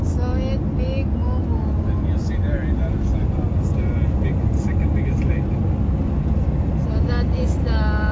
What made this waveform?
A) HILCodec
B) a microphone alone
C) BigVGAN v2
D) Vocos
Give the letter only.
B